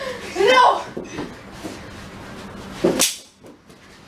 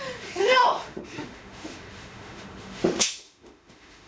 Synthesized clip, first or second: second